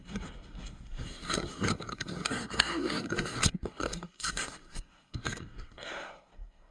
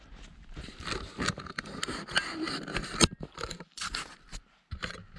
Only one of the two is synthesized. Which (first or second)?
first